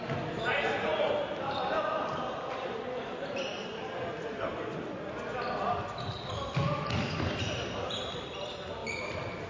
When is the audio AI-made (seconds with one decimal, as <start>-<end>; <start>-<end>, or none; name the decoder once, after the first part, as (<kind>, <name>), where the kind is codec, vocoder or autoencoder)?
0.9-3.0 (vocoder, BigVGAN v2); 8.8-9.5